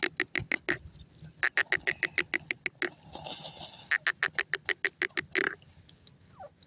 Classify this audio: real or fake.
real